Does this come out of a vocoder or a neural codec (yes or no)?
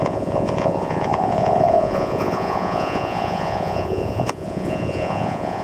yes